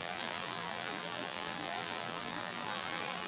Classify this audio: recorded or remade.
remade